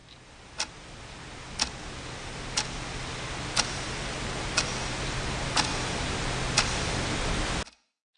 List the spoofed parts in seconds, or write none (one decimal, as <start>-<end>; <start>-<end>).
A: none